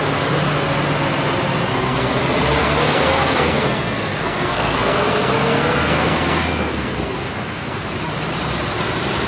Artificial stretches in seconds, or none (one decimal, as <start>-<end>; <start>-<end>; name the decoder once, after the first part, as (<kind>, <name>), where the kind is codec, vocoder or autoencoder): 1.7-2.2 (codec, SNAC); 2.6-7.8